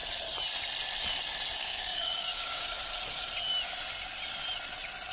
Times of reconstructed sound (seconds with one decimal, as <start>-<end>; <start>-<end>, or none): 1.6-2.8